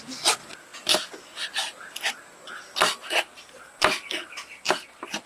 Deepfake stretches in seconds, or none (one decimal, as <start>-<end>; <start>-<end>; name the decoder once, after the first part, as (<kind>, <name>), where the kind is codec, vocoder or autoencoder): none